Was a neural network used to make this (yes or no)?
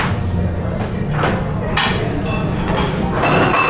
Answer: no